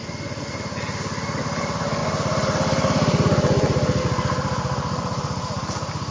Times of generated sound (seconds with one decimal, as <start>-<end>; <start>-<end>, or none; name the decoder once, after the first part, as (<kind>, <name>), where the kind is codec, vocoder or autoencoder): none